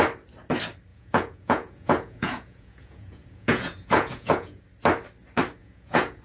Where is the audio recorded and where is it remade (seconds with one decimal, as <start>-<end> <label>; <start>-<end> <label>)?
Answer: 0.0-0.9 recorded; 0.9-4.6 remade; 4.6-5.6 recorded; 5.6-6.2 remade